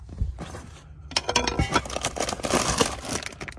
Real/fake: real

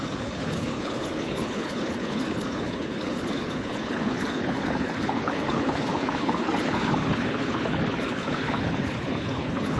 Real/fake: fake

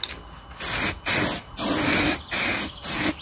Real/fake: real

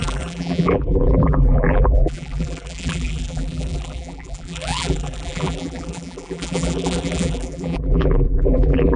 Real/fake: fake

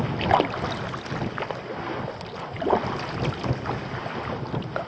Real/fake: real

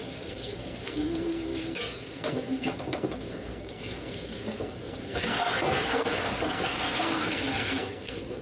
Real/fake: fake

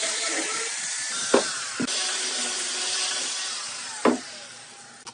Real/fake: fake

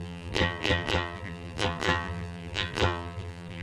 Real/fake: fake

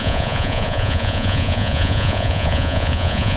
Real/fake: fake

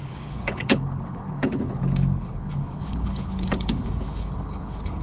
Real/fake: fake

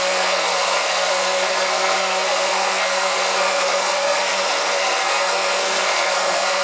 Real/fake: fake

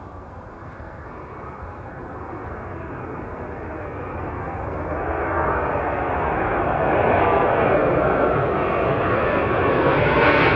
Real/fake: fake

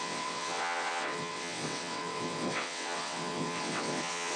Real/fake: fake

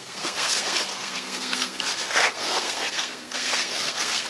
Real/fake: fake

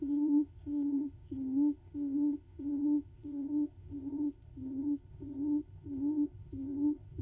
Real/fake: fake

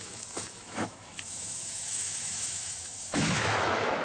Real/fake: fake